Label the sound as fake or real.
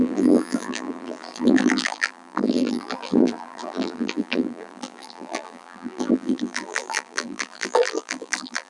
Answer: fake